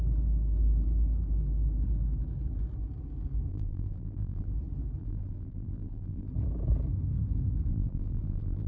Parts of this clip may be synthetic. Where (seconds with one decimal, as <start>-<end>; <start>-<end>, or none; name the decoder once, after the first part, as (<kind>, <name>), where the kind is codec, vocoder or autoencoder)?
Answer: 3.5-4.5 (vocoder, BigVGAN v2); 5.0-6.3; 7.7-8.7